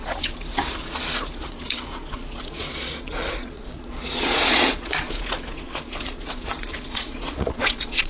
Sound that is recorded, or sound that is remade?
remade